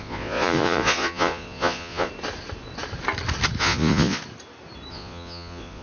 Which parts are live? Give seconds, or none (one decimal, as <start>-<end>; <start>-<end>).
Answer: 2.1-3.6; 4.2-4.9